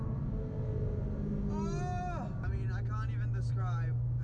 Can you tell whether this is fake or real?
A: real